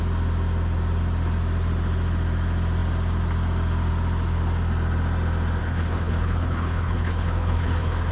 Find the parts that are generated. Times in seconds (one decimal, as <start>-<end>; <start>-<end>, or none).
5.6-8.1

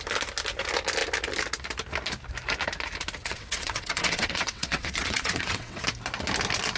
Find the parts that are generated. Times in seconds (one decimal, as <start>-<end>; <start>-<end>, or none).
3.2-5.8

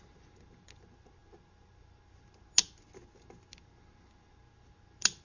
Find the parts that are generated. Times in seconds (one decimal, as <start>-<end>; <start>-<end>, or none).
none

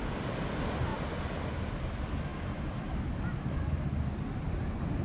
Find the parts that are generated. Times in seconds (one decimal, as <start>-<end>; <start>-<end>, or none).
none

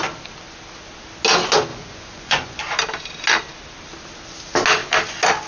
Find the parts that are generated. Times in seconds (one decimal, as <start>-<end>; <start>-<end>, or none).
1.7-2.6